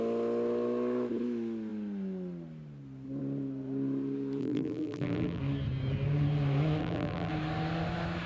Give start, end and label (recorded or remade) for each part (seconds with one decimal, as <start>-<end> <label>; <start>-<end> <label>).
0.0-4.4 recorded; 4.4-5.4 remade; 5.4-6.8 recorded; 6.8-7.3 remade; 7.3-8.3 recorded